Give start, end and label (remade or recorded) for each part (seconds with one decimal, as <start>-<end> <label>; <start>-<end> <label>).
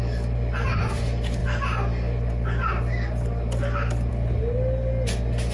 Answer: 0.0-5.5 recorded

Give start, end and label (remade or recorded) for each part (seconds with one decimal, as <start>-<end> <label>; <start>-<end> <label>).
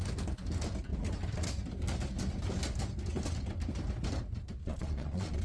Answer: 0.0-4.6 recorded; 4.6-5.4 remade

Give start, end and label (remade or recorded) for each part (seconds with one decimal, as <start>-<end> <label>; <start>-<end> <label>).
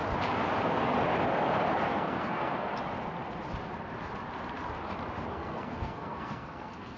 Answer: 0.0-1.7 recorded; 1.7-2.7 remade; 2.7-5.3 recorded; 5.3-7.0 remade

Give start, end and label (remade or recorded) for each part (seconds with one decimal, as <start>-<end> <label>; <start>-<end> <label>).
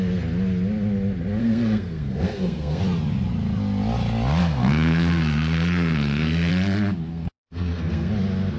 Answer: 0.0-1.4 recorded; 1.4-2.8 remade; 2.8-4.4 recorded; 4.4-6.5 remade; 6.5-7.1 recorded; 7.1-8.1 remade; 8.1-8.6 recorded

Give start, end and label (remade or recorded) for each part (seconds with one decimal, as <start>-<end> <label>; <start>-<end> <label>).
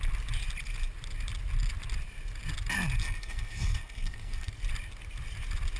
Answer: 0.0-3.0 recorded; 3.0-4.5 remade; 4.5-5.8 recorded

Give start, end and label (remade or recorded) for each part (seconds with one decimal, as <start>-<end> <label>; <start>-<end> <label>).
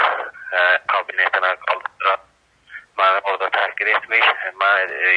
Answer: 0.0-5.2 recorded